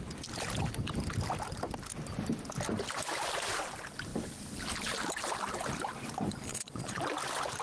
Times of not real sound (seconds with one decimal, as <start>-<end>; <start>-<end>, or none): 6.5-7.0

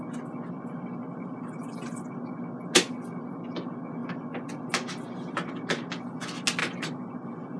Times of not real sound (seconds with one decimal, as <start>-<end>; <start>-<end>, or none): 1.1-2.0; 6.6-7.6

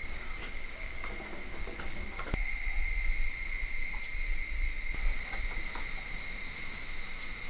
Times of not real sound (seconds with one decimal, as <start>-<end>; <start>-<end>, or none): 0.0-1.1; 1.5-2.2